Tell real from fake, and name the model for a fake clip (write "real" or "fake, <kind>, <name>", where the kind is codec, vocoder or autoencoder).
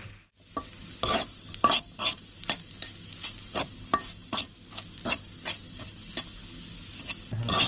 real